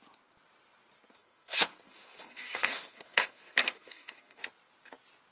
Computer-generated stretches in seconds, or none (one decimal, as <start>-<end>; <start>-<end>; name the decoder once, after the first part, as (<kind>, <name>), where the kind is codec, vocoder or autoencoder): 1.2-4.4 (codec, SNAC)